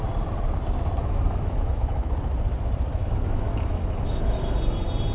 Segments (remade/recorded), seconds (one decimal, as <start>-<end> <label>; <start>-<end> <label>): 0.0-1.0 recorded; 1.0-2.1 remade; 2.1-3.0 recorded; 3.0-4.4 remade; 4.4-5.1 recorded